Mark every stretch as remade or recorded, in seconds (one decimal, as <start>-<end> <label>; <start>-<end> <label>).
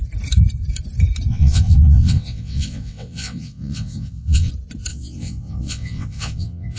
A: 0.0-1.3 recorded; 1.3-4.5 remade; 4.5-4.9 recorded; 4.9-6.8 remade